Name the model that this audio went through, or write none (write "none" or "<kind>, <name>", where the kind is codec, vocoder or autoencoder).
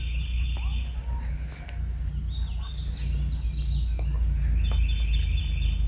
none